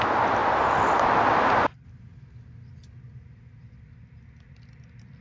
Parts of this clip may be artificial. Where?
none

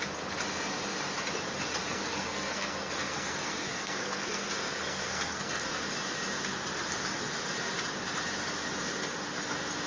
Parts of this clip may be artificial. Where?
1.8-5.9 (codec, SNAC)

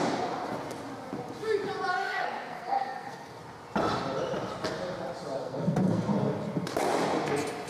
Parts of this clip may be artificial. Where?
1.9-3.4 (codec, SNAC); 5.4-6.1

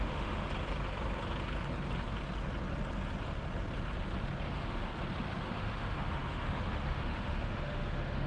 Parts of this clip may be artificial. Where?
0.0-0.5 (autoencoder, DAC-VAE); 4.5-4.9; 5.4-8.3

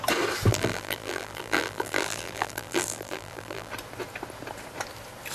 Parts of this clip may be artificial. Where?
0.5-3.7 (vocoder, BigVGAN v2)

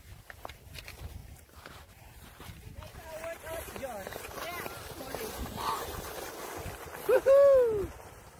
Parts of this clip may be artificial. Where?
1.2-6.2 (vocoder, BigVGAN v2)